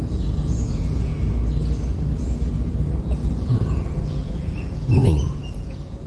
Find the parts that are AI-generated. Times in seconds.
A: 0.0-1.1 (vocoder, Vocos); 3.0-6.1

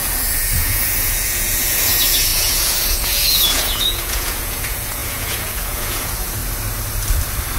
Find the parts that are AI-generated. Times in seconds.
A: 0.0-6.4 (vocoder, Vocos)

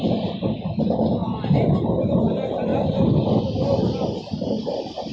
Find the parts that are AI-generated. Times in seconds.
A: none

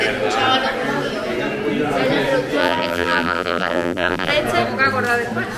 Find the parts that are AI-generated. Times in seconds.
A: 2.6-4.3 (vocoder, BigVGAN v2)

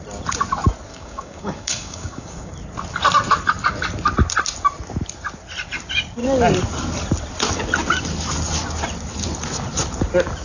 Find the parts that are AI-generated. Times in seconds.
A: 0.9-2.5 (codec, DAC)

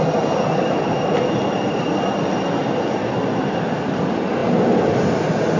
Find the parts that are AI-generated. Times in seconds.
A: none

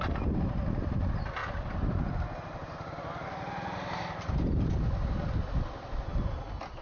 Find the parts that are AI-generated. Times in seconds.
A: none